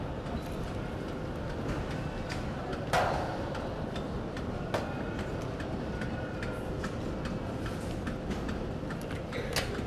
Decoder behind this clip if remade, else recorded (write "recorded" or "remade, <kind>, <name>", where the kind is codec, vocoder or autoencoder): recorded